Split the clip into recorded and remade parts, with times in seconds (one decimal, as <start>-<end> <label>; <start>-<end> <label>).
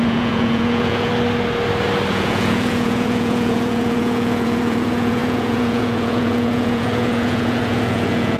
0.0-1.1 remade; 1.1-2.1 recorded; 2.1-8.4 remade